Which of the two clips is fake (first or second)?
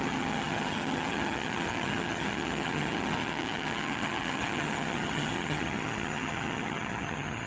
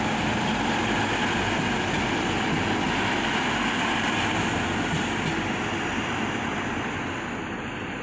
first